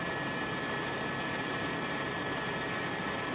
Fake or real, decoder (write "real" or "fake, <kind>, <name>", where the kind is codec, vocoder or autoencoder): real